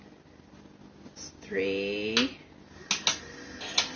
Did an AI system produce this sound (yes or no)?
no